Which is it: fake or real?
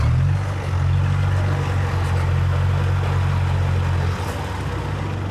real